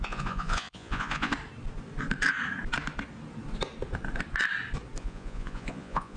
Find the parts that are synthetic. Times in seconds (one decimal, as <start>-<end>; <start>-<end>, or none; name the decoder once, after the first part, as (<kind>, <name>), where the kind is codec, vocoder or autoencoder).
0.0-1.3 (vocoder, Vocos); 5.0-6.2